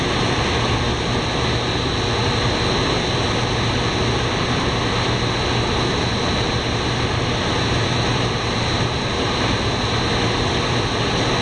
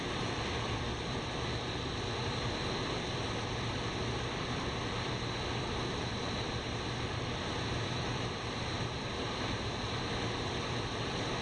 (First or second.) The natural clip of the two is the first